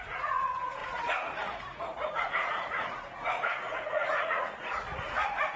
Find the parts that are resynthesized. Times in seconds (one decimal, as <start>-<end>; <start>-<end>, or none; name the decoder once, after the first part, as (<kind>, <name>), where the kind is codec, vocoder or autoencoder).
0.0-5.6 (vocoder, Vocos)